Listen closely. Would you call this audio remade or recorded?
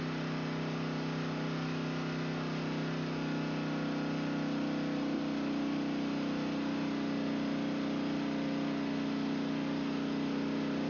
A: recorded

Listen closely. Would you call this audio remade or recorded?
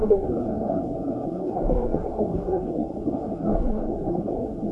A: remade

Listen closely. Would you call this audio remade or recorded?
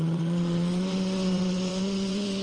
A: remade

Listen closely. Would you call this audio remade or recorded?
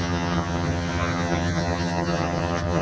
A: remade